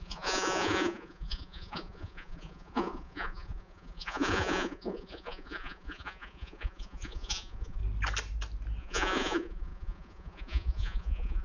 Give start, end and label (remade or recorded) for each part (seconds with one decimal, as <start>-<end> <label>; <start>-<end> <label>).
0.0-7.8 remade; 7.8-8.8 recorded; 8.8-11.4 remade